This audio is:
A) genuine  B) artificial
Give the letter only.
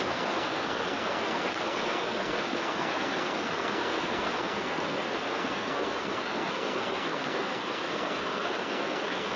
B